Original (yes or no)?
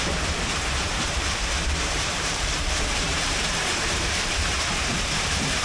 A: no